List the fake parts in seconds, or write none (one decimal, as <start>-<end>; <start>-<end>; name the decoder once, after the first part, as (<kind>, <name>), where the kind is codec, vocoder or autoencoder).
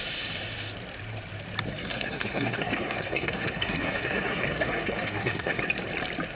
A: 1.8-5.6 (codec, SNAC)